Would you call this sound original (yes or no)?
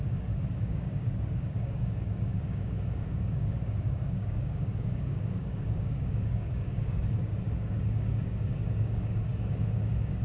no